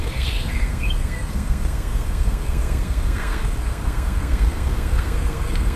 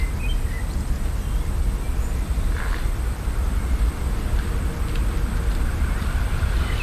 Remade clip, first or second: first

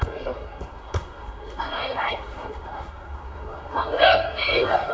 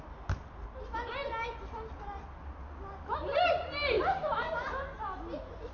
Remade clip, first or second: first